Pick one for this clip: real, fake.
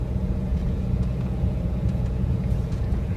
fake